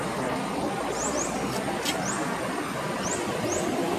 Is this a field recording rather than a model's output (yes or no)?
yes